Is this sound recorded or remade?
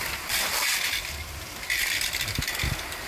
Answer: remade